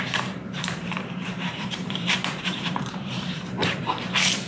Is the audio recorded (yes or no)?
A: no